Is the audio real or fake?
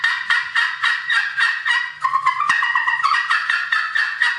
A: fake